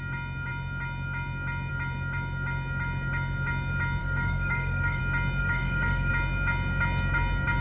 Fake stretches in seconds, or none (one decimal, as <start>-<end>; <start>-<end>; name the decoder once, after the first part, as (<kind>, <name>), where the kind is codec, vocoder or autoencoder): 4.0-5.0 (codec, DAC); 5.4-6.1